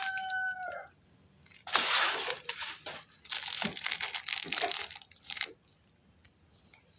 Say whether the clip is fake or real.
real